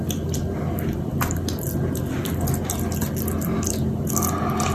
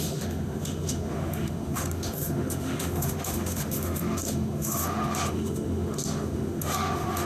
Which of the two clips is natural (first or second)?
first